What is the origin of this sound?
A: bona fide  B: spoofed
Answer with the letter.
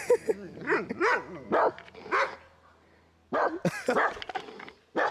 A